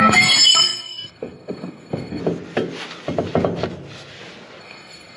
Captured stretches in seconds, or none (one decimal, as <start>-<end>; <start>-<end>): 2.2-4.6

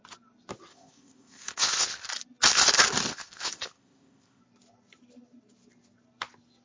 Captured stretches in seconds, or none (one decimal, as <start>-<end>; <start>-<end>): 0.0-0.7; 2.1-3.1; 4.4-6.6

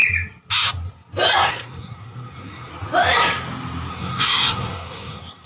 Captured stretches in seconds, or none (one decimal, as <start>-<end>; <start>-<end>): 0.0-1.5; 2.7-3.9

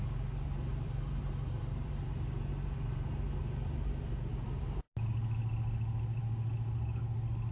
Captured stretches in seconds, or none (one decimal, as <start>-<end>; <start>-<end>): 0.0-0.7; 4.8-7.5

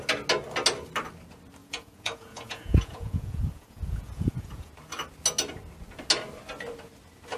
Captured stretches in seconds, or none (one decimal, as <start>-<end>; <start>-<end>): 0.0-1.6; 4.7-7.4

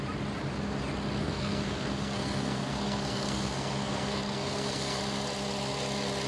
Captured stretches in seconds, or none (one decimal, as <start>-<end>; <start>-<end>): 0.0-1.2; 5.0-6.3

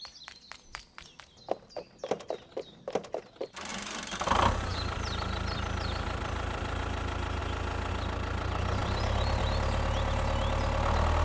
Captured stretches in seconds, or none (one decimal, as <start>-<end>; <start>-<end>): 0.0-3.7; 4.3-4.7; 6.8-8.8; 9.4-11.2